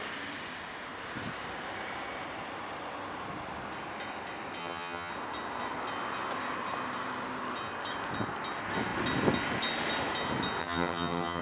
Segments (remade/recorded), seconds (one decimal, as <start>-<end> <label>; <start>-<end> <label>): 0.0-4.6 recorded; 4.6-5.1 remade; 5.1-10.6 recorded; 10.6-11.4 remade